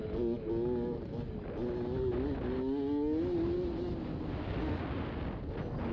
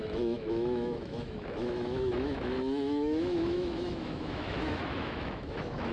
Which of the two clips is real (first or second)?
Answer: first